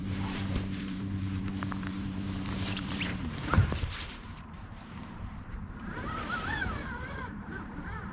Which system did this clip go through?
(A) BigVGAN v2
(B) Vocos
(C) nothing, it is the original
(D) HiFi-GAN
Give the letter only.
A